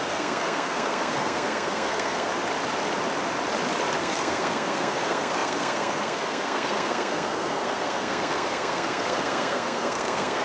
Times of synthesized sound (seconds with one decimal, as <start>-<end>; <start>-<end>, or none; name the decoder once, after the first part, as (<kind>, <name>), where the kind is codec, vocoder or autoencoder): 0.0-2.3 (codec, SNAC); 4.0-10.4